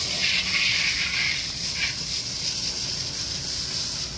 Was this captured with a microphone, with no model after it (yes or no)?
yes